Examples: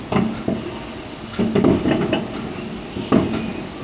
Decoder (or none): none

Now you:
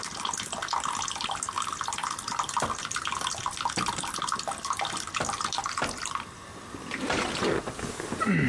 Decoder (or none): none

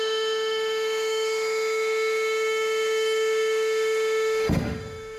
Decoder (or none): autoencoder, DAC-VAE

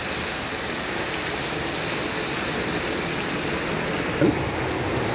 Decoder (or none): none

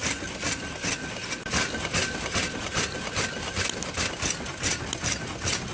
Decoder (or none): none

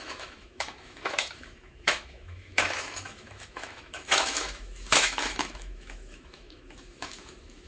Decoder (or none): autoencoder, DAC-VAE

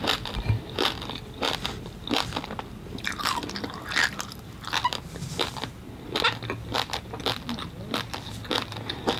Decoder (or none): none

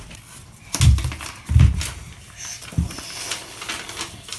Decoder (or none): none